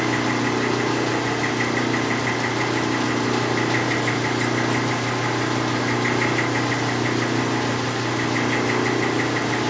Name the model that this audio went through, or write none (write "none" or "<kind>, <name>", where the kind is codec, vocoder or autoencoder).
none